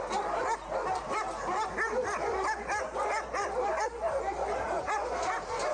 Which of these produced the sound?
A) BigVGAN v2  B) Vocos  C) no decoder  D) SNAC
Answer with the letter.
C